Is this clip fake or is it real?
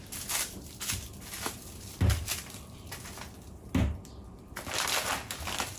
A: real